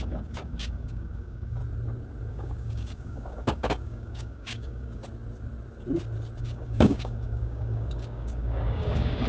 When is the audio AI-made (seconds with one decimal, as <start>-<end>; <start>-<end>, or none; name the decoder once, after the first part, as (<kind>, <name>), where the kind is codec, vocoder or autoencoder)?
0.0-1.6 (codec, DAC); 2.3-5.0; 6.4-9.3